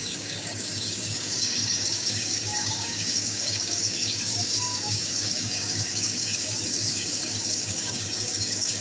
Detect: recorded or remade remade